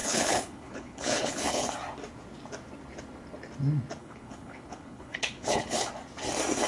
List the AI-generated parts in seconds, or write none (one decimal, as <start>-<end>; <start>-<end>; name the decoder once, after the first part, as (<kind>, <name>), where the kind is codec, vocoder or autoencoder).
0.0-1.7 (codec, HILCodec); 4.0-5.9